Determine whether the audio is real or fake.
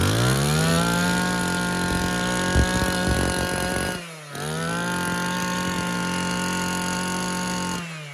real